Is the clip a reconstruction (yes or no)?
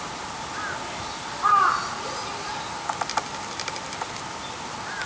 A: no